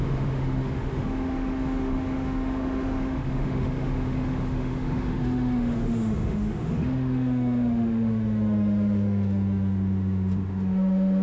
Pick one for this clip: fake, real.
fake